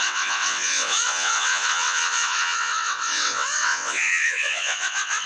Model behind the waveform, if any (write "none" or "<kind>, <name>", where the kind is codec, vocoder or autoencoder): vocoder, WaveNeXt